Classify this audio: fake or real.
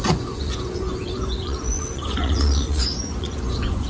fake